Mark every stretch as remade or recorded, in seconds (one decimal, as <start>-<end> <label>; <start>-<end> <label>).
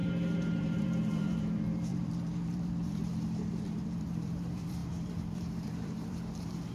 0.0-6.7 remade